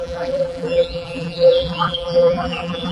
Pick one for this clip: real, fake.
fake